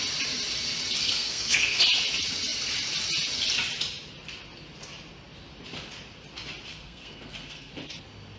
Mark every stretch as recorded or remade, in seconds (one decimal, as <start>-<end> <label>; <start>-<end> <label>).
0.0-1.0 recorded; 1.0-1.8 remade; 1.8-6.7 recorded; 6.7-7.7 remade; 7.7-8.4 recorded